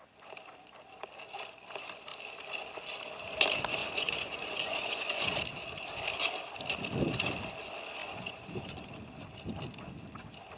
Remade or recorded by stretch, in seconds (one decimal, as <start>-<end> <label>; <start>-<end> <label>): 0.0-3.8 recorded; 3.8-5.4 remade; 5.4-8.0 recorded; 8.0-8.9 remade; 8.9-10.6 recorded